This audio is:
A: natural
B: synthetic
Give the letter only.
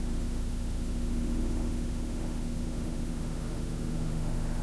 B